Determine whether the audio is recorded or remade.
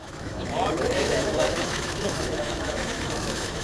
remade